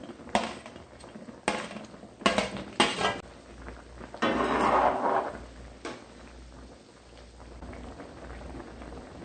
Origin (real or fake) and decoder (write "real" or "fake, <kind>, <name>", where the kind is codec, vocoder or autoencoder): real